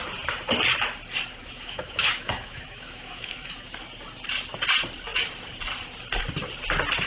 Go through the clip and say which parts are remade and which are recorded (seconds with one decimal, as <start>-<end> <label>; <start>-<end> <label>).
0.0-1.4 recorded; 1.4-3.7 remade; 3.7-7.1 recorded

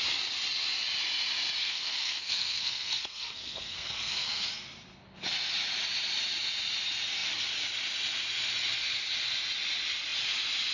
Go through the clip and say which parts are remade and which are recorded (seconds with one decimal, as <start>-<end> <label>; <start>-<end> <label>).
0.0-1.6 recorded; 1.6-4.6 remade; 4.6-10.7 recorded

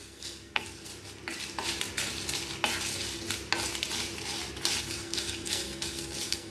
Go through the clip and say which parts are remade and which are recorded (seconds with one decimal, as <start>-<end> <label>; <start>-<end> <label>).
0.0-0.9 remade; 0.9-4.8 recorded; 4.8-6.5 remade